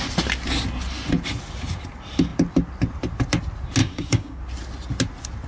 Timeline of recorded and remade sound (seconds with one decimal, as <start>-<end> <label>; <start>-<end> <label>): 0.0-3.8 recorded; 3.8-4.4 remade; 4.4-5.5 recorded